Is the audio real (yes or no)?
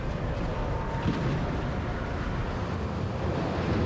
yes